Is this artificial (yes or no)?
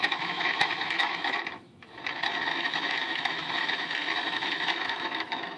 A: yes